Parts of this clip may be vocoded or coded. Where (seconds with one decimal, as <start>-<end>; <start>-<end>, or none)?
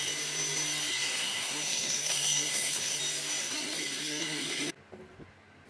0.9-3.0; 3.4-4.7